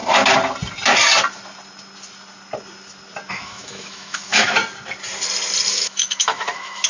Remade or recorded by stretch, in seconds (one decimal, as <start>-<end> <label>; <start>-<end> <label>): 0.0-3.3 recorded; 3.3-4.6 remade; 4.6-5.7 recorded; 5.7-6.9 remade